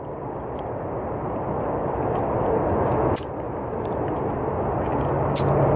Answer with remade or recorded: recorded